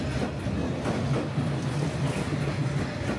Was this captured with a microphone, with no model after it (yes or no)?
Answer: yes